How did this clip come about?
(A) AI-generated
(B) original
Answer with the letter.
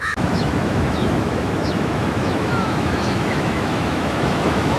A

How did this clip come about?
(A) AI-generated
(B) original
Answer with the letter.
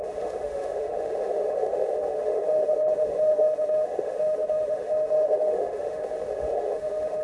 A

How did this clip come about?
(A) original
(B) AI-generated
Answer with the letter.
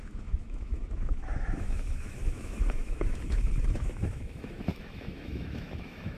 B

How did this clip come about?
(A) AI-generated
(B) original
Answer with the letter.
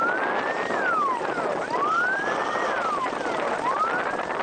B